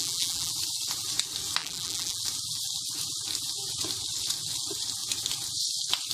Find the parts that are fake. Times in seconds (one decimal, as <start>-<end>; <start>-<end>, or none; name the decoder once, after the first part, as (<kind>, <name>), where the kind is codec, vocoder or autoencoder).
0.0-0.5 (vocoder, BigVGAN v2); 1.6-2.2